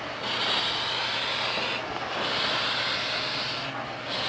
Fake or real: real